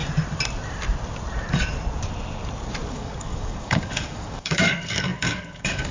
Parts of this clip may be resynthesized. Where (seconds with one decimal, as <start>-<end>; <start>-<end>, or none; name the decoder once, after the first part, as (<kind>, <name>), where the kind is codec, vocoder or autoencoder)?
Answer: 2.9-5.9 (codec, DAC)